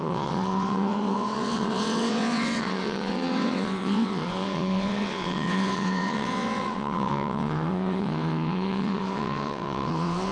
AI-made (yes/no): yes